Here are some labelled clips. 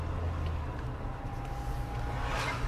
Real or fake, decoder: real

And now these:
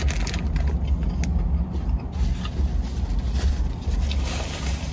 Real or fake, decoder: real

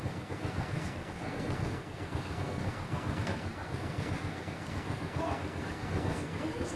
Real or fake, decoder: fake, codec, SNAC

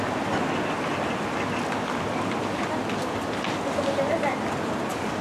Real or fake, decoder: real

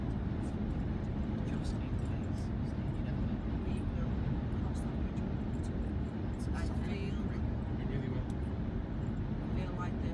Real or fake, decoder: real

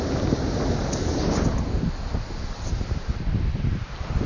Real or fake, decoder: real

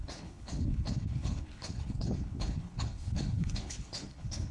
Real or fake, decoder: fake, codec, HILCodec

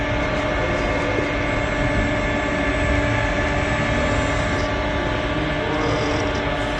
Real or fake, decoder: real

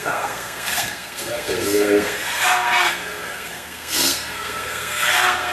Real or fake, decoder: fake, codec, SNAC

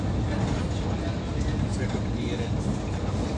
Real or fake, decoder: real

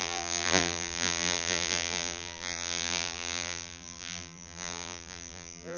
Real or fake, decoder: fake, vocoder, BigVGAN v2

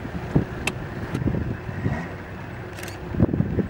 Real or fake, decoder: real